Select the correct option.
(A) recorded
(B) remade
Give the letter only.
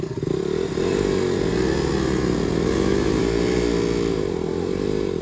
A